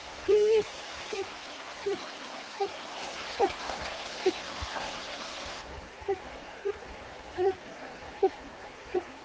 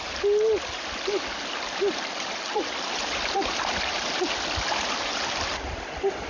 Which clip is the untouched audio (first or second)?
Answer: second